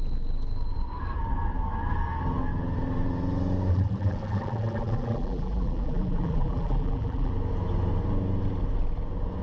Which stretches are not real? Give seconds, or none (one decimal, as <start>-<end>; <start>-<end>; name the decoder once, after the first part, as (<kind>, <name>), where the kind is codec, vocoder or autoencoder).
3.7-7.3 (vocoder, BigVGAN v2)